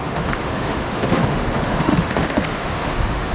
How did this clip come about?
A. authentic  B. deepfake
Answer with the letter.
B